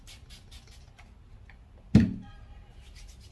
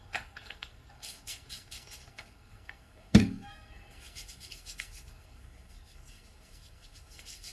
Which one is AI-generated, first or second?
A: second